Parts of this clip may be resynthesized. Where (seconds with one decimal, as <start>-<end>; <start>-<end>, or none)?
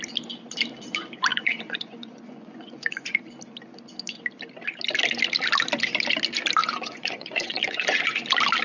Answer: 1.3-3.2; 6.6-8.2